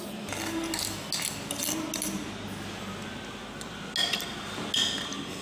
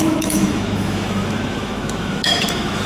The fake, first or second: second